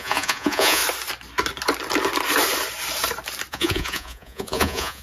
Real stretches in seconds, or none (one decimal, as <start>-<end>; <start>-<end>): 0.8-3.5